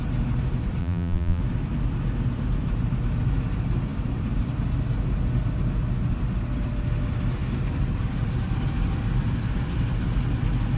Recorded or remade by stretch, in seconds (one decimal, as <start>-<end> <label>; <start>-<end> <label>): 0.0-0.8 recorded; 0.8-1.4 remade; 1.4-10.8 recorded